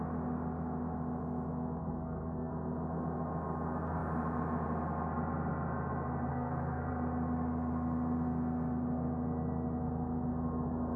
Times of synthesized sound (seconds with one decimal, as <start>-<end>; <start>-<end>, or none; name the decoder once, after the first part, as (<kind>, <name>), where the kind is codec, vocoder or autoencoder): 1.8-2.5 (codec, SNAC); 6.3-6.9